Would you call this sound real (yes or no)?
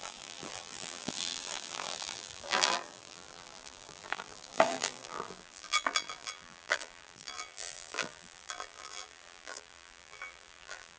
no